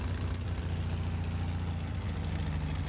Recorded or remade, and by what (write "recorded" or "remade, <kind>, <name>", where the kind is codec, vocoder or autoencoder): recorded